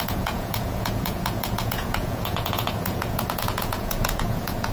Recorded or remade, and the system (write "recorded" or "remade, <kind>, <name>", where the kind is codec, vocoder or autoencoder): remade, vocoder, Vocos